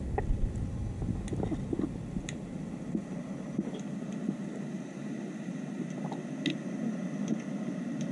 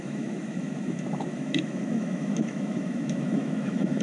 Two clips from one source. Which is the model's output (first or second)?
second